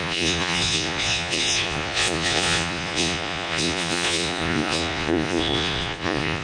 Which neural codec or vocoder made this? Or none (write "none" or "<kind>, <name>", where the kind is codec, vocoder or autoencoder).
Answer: vocoder, Vocos